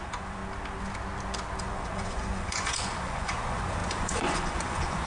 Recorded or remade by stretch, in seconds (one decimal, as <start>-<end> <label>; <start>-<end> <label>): 0.0-0.4 remade; 0.4-1.6 recorded; 1.6-5.1 remade